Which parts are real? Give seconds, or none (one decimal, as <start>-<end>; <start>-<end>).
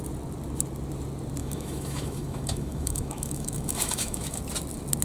0.0-1.4; 4.4-5.0